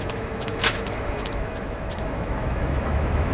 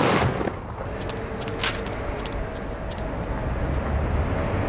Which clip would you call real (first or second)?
second